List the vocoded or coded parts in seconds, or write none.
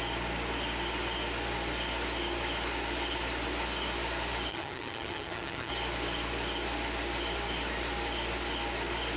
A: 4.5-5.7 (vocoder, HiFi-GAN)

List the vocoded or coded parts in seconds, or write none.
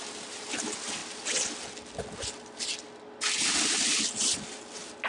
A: none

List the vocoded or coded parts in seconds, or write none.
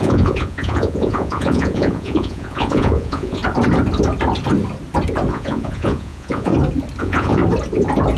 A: 0.0-3.4 (vocoder, Vocos); 5.3-6.5; 7.0-7.4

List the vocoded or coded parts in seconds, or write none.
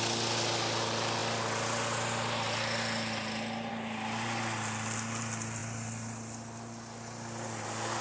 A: none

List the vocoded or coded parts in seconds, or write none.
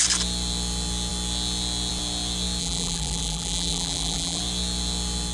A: 2.6-4.4 (vocoder, BigVGAN v2)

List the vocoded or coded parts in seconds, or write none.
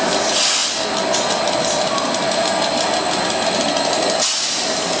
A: none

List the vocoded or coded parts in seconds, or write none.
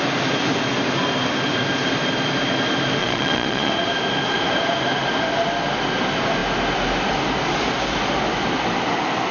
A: 3.0-3.7 (vocoder, Vocos)